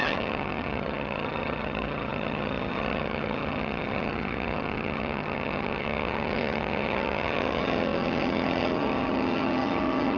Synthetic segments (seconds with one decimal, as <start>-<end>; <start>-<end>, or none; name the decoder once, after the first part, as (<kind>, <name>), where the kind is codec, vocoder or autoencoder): 0.0-10.2 (vocoder, HiFi-GAN)